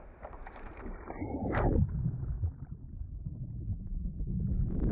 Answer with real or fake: real